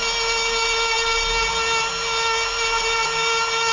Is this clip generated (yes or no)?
no